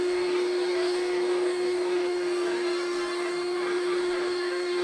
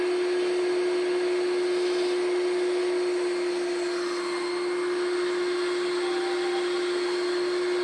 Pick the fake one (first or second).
first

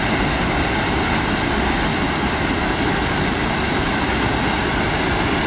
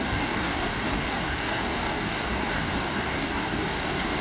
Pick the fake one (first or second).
second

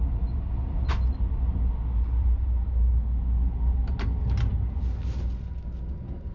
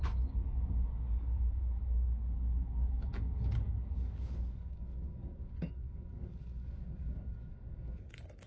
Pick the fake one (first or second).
second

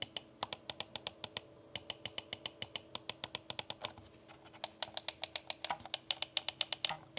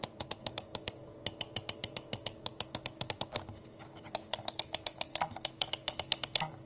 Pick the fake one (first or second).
second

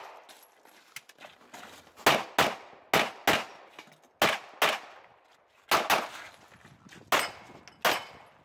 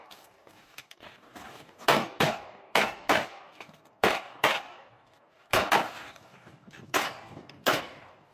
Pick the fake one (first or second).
second